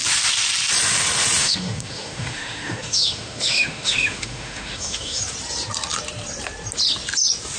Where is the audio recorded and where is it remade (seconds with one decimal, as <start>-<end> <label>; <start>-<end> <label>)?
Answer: 0.0-1.4 recorded; 1.4-5.2 remade; 5.2-7.6 recorded

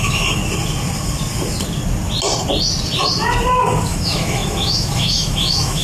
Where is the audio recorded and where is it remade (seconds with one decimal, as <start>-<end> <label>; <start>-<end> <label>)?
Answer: 0.0-0.4 remade; 0.4-3.9 recorded; 3.9-5.8 remade